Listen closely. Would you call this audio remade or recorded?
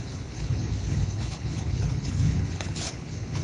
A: remade